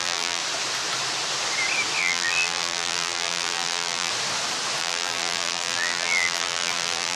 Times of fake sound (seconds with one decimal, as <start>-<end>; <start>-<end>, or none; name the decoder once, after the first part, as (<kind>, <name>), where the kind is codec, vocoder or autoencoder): 0.0-0.4 (vocoder, BigVGAN v2); 2.0-4.1; 4.8-7.2

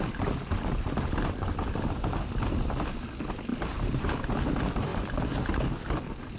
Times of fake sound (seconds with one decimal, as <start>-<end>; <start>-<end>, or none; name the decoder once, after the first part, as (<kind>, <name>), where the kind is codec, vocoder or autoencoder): 3.5-4.2 (vocoder, BigVGAN v2)

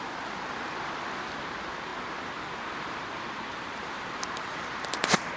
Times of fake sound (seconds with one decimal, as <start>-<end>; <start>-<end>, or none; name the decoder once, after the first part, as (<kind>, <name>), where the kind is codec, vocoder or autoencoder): 0.0-1.9 (vocoder, BigVGAN v2); 2.8-5.4

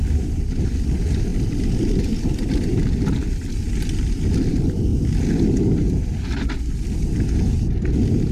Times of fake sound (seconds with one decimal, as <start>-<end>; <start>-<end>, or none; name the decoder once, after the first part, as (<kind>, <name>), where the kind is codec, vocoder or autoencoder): none

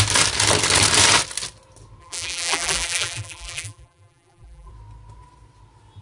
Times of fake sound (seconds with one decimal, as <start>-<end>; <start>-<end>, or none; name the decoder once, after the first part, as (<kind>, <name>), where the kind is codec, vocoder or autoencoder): 2.0-4.7 (vocoder, BigVGAN v2)

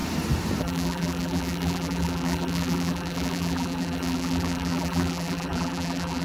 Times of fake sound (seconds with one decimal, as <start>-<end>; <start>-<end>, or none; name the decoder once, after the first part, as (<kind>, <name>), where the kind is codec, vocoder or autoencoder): 0.6-6.2 (vocoder, BigVGAN v2)

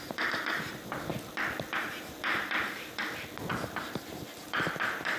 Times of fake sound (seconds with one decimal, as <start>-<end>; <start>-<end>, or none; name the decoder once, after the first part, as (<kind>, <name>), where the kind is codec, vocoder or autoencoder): 0.0-1.1 (vocoder, BigVGAN v2); 1.7-3.0; 3.5-5.2

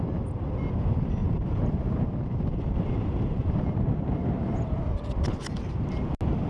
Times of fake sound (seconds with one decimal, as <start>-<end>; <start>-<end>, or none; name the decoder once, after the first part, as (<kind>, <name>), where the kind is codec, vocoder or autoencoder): 1.2-5.1 (vocoder, BigVGAN v2)